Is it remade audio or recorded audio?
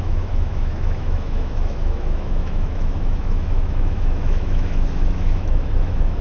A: remade